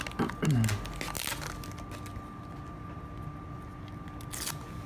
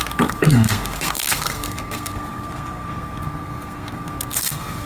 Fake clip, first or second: second